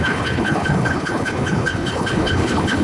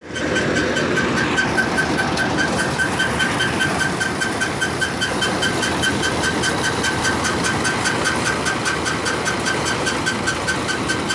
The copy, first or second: first